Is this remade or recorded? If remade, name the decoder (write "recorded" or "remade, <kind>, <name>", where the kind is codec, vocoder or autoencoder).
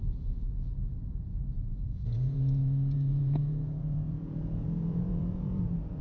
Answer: remade, vocoder, Vocos